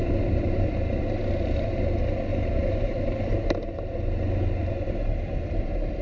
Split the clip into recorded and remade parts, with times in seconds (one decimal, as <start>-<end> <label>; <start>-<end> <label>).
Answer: 0.0-1.9 remade; 1.9-2.3 recorded; 2.3-3.4 remade; 3.4-4.6 recorded; 4.6-6.0 remade